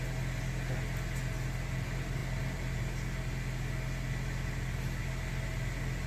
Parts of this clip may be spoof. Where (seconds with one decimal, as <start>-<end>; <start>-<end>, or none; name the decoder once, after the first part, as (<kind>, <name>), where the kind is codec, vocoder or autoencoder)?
none